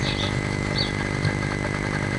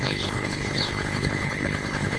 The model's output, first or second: second